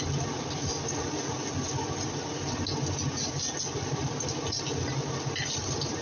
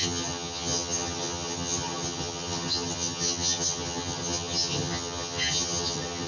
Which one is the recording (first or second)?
first